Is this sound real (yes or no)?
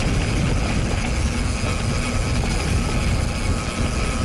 yes